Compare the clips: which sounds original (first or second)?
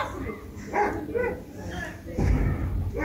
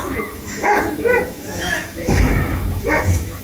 first